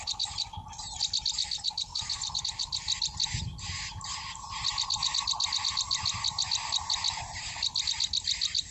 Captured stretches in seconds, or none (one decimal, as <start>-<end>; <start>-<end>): 0.0-8.7